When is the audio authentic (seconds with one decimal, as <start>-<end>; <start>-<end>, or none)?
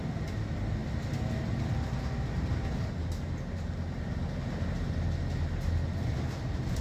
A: 0.0-6.8